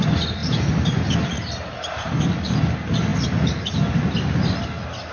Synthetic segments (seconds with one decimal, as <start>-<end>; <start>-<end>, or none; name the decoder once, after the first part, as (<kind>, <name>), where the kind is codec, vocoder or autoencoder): none